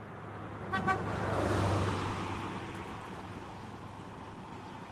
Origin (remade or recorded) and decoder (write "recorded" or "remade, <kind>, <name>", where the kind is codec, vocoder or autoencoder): recorded